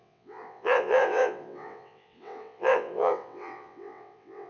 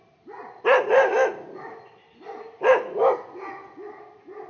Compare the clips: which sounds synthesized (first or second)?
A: first